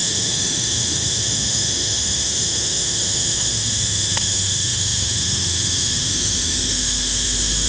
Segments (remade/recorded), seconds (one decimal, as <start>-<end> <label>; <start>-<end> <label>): 0.0-7.7 remade